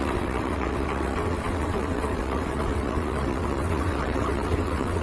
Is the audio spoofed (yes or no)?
yes